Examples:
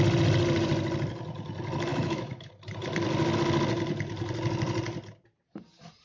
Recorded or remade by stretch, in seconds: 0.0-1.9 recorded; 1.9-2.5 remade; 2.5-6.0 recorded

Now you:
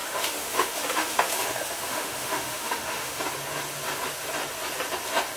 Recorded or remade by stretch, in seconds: 0.0-3.2 remade; 3.2-5.4 recorded

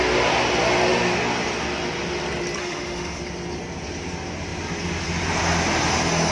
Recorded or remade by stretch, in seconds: 0.0-2.6 recorded; 2.6-3.2 remade; 3.2-6.3 recorded

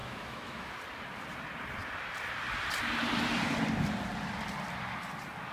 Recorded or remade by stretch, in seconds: 0.0-0.7 remade; 0.7-5.5 recorded

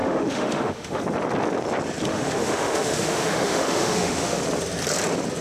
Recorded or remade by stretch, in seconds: 0.0-1.0 remade; 1.0-2.1 recorded; 2.1-4.4 remade; 4.4-5.4 recorded

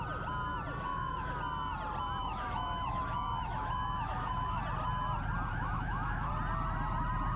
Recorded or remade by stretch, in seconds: 0.0-0.9 recorded; 0.9-1.4 remade; 1.4-2.2 recorded; 2.2-4.6 remade; 4.6-5.5 recorded; 5.5-6.3 remade; 6.3-7.4 recorded